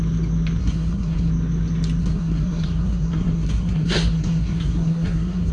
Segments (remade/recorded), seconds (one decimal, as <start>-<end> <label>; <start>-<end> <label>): 0.0-0.6 recorded; 0.6-1.3 remade; 1.3-2.0 recorded; 2.0-5.5 remade